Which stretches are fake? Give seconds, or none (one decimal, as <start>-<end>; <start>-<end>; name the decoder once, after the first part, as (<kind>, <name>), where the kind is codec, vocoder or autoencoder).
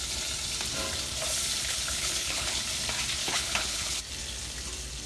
1.6-2.6 (codec, HILCodec); 3.2-4.0